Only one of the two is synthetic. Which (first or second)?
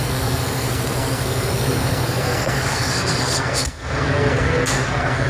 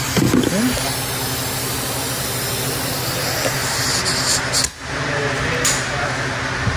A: first